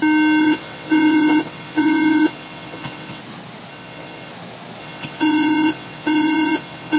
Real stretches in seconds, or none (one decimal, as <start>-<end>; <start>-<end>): 0.0-0.4; 3.2-3.7; 4.3-4.8